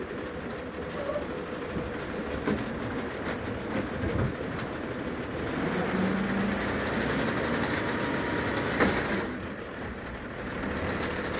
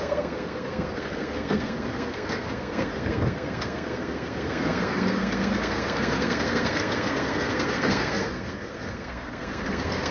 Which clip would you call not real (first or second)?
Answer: second